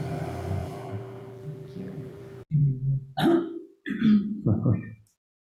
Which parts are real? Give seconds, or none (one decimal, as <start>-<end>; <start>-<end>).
0.0-0.6; 2.2-5.5